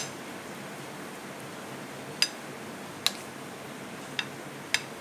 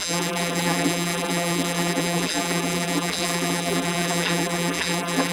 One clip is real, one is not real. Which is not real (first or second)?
second